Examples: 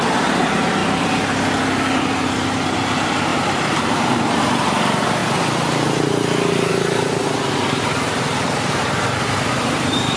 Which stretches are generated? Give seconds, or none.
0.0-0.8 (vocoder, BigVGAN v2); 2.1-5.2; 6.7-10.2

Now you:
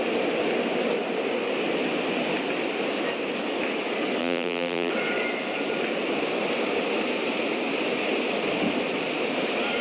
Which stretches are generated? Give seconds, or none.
4.2-4.9 (vocoder, BigVGAN v2)

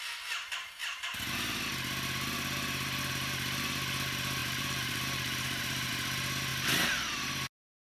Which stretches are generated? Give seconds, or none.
4.4-5.9 (vocoder, BigVGAN v2)

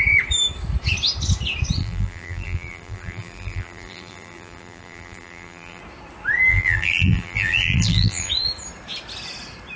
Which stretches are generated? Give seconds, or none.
1.8-5.8 (vocoder, BigVGAN v2); 6.5-8.3

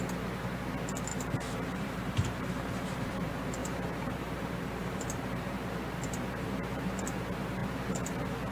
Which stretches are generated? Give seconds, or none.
1.1-3.1 (vocoder, BigVGAN v2); 3.6-7.0; 7.6-8.5